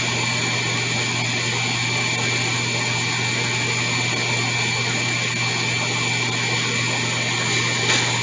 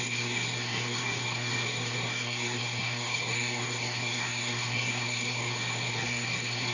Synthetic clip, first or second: second